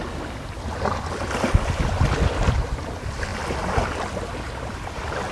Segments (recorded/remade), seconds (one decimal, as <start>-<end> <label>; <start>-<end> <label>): 0.0-5.3 recorded